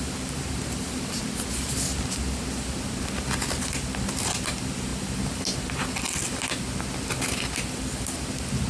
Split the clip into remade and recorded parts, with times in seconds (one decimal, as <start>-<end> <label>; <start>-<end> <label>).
0.0-8.7 recorded